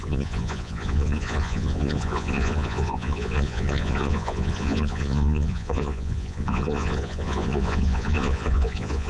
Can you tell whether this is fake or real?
fake